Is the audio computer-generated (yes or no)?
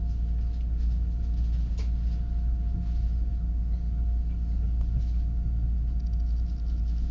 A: no